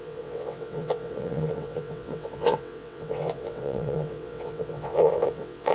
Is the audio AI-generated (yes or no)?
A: yes